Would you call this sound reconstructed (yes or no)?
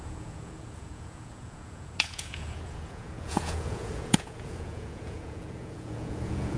yes